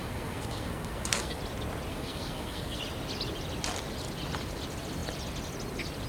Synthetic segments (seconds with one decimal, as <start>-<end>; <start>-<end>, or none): 0.0-1.4; 1.9-2.8

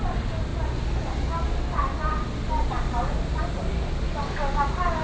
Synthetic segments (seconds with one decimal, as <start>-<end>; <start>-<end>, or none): none

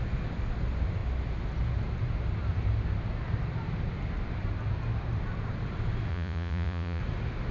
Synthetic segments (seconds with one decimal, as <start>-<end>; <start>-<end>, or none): 6.1-7.0

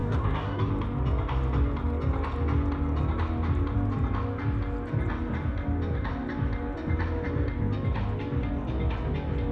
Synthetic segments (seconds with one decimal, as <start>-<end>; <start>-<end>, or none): 0.0-0.7

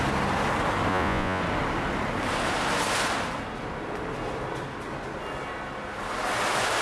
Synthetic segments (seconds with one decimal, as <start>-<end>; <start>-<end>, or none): 0.9-1.4

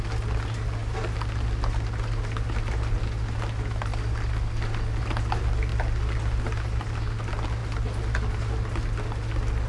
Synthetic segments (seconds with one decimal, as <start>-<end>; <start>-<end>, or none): none

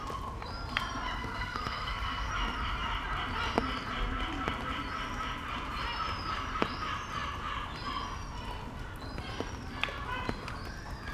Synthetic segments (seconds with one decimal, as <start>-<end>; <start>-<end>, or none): 1.2-2.3

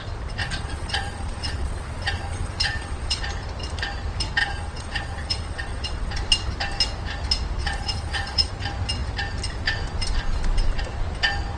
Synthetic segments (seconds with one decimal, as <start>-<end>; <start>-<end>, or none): 0.4-3.2; 4.4-6.1; 7.6-8.5